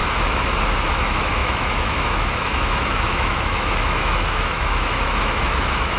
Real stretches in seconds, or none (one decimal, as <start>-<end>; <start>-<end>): 0.0-0.9